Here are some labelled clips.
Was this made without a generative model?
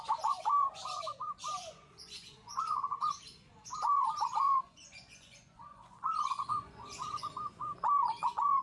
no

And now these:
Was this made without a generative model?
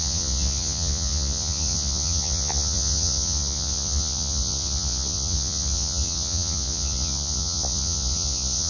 no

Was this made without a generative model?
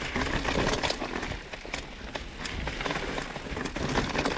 yes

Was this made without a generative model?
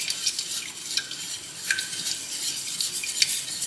yes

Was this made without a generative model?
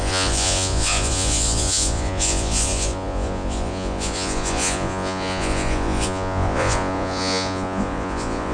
no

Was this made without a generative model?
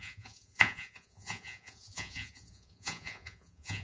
no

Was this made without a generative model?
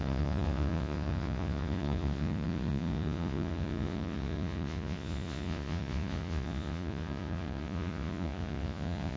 no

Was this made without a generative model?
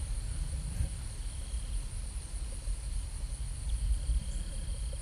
yes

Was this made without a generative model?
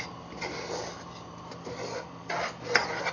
yes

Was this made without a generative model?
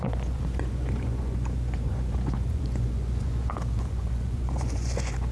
no